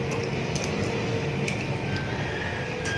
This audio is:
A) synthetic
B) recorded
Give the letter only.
B